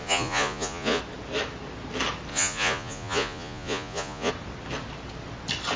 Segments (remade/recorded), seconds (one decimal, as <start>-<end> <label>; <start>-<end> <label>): 0.0-1.0 remade; 1.0-2.3 recorded; 2.3-4.3 remade; 4.3-5.8 recorded